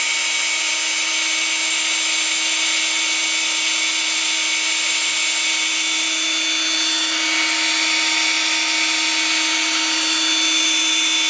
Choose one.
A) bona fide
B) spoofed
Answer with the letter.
A